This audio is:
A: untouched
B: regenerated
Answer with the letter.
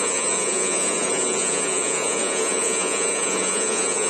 B